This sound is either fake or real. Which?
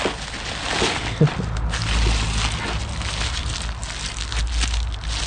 real